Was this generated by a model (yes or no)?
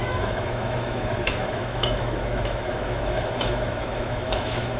yes